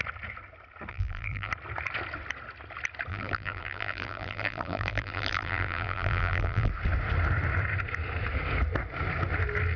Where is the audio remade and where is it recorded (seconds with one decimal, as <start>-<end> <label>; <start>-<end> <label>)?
0.0-0.9 recorded; 0.9-1.5 remade; 1.5-3.1 recorded; 3.1-6.7 remade; 6.7-9.8 recorded

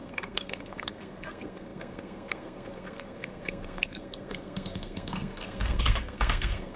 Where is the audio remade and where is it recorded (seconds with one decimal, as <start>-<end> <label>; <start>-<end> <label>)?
0.0-6.8 remade

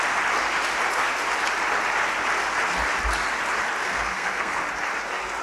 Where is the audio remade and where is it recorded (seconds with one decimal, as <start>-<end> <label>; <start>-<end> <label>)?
0.0-3.8 recorded; 3.8-4.6 remade; 4.6-5.4 recorded